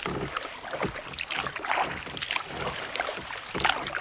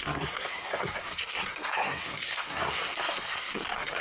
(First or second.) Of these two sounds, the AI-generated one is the second